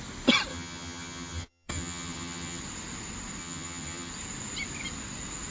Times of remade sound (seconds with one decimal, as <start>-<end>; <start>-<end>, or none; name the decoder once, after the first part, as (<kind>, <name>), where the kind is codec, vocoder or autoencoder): 0.5-2.6 (vocoder, HiFi-GAN); 3.4-4.1